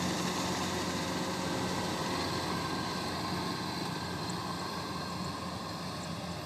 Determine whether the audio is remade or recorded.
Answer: recorded